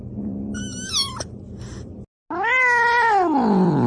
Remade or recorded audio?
recorded